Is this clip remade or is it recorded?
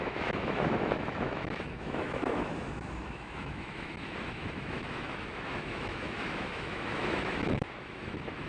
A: remade